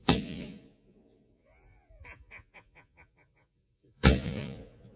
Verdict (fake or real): fake